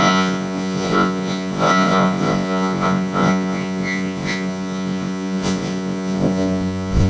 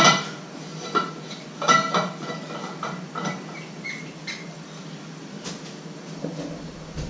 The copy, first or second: first